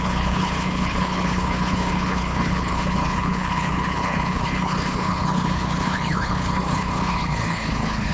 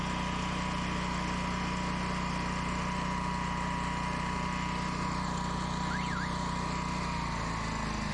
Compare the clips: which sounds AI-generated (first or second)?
first